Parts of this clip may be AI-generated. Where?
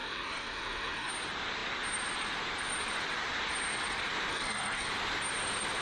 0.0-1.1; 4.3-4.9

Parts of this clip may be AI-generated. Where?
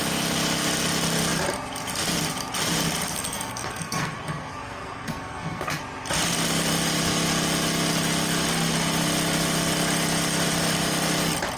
3.1-5.8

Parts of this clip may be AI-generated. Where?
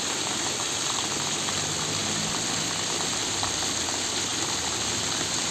none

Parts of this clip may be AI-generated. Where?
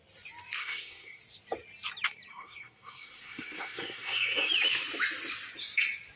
0.6-1.2; 2.3-4.5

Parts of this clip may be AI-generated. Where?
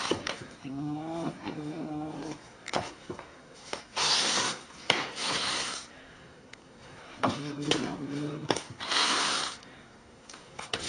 0.0-10.9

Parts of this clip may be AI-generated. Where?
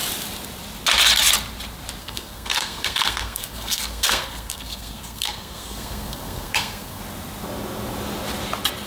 2.0-7.0